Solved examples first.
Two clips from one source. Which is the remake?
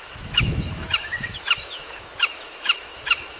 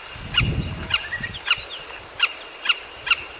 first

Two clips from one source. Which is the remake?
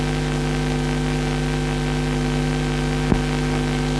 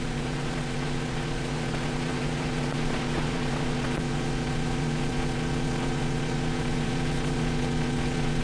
second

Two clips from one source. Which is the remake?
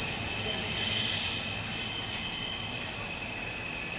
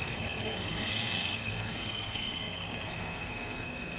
second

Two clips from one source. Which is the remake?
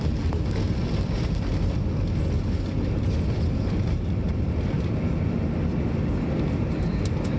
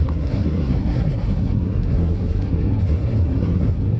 second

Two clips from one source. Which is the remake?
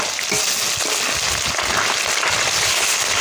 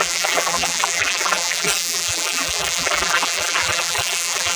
second